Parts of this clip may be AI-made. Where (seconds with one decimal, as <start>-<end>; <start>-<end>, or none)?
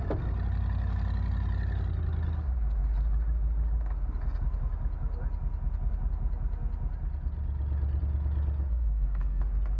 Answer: 8.7-9.4